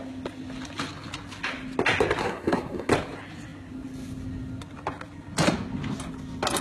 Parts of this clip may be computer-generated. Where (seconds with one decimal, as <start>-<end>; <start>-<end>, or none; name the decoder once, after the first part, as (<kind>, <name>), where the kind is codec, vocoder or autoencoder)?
2.2-2.9 (codec, SNAC)